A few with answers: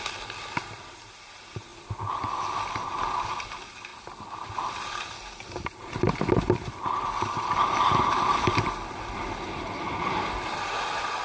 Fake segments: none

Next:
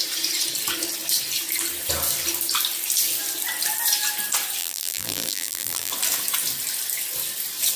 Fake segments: 4.6-5.9 (vocoder, BigVGAN v2)

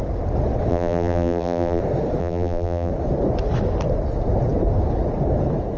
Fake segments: 0.7-1.8 (vocoder, BigVGAN v2); 2.2-2.9